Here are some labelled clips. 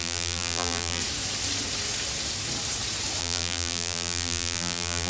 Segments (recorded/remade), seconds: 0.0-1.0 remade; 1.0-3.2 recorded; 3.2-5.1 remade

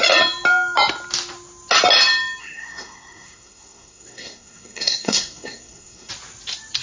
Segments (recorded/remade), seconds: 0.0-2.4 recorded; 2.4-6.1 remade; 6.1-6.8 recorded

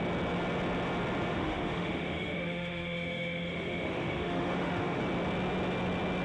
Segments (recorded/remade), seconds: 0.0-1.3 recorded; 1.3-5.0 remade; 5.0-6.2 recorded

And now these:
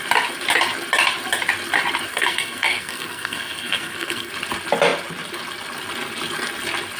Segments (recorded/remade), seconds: 0.0-2.1 recorded; 2.1-4.3 remade; 4.3-7.0 recorded